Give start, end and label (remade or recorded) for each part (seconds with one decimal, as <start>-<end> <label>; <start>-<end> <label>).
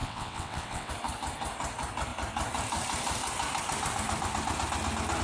0.0-0.9 remade; 0.9-5.2 recorded